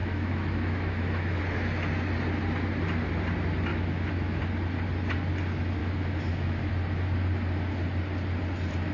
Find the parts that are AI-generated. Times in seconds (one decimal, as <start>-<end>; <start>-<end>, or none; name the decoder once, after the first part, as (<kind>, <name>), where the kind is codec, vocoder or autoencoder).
0.0-1.4 (autoencoder, DAC-VAE); 3.7-4.4; 5.8-6.7